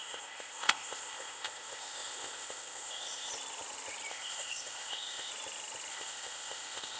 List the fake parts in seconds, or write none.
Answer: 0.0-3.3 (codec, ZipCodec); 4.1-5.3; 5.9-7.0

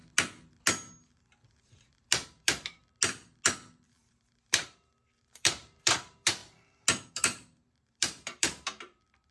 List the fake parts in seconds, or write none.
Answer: 1.5-2.8 (vocoder, BigVGAN v2); 4.0-6.4; 7.1-9.3

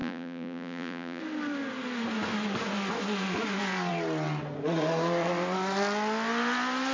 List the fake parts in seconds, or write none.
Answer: 0.0-1.2 (vocoder, Vocos)

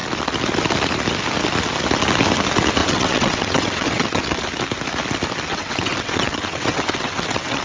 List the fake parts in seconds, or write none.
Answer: 2.8-4.4 (vocoder, WaveNeXt); 5.5-7.6

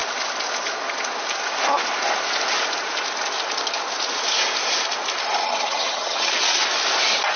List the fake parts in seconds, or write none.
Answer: 5.4-6.3 (vocoder, HiFi-GAN)